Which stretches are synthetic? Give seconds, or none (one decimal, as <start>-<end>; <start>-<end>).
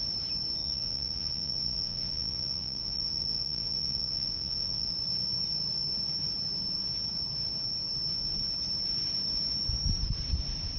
0.6-4.9